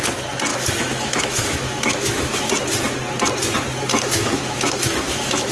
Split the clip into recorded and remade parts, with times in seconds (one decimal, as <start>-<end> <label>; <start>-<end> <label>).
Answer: 0.0-0.5 recorded; 0.5-2.5 remade; 2.5-3.9 recorded; 3.9-5.5 remade

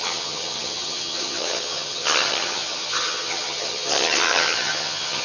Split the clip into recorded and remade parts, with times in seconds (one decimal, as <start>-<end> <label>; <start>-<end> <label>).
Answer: 0.0-5.2 remade

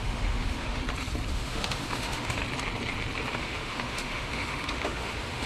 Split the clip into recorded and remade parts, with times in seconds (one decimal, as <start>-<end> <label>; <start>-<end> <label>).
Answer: 0.0-0.8 remade; 0.8-1.3 recorded; 1.3-2.4 remade; 2.4-3.3 recorded; 3.3-5.5 remade